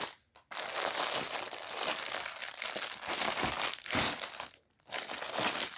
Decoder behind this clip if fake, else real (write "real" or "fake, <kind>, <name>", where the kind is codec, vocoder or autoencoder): real